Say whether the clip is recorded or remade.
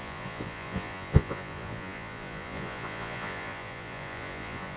remade